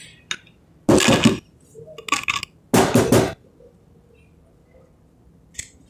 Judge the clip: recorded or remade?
recorded